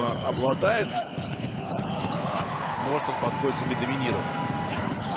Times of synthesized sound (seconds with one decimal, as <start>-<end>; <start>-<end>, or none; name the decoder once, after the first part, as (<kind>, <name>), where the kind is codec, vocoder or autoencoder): 0.0-2.9 (codec, HILCodec); 4.7-5.2

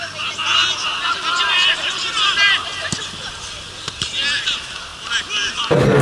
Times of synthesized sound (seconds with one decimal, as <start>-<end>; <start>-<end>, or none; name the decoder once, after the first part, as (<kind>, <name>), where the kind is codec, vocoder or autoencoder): none

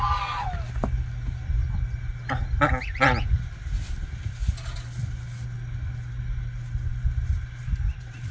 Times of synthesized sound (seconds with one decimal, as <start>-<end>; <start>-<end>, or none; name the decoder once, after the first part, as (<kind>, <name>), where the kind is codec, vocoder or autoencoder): none

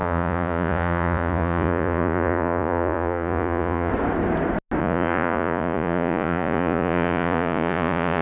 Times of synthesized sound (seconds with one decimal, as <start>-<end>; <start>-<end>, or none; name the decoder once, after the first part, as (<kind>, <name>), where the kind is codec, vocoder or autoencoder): 0.0-3.9 (vocoder, Vocos); 4.8-8.2

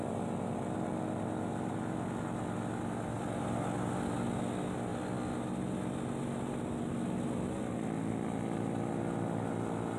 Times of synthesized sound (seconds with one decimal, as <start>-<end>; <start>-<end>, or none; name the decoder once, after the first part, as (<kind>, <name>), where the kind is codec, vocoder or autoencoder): none

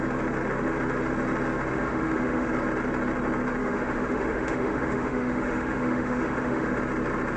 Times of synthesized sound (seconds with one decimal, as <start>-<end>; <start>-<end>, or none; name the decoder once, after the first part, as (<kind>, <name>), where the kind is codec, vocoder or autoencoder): 1.7-2.5 (autoencoder, DAC-VAE); 3.6-6.8

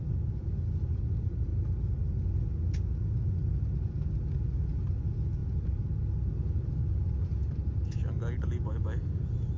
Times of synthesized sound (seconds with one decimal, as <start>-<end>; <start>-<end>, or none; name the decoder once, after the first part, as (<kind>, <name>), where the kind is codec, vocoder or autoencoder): none

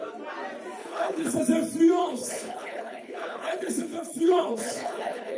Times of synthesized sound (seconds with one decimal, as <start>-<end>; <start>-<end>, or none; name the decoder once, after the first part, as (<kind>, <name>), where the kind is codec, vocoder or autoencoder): 0.8-1.4 (codec, HILCodec); 2.0-5.4